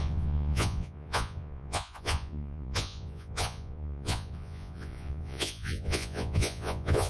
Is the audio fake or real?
fake